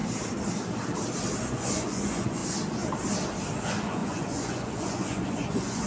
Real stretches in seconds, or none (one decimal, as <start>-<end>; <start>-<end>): 0.0-1.4; 2.4-3.6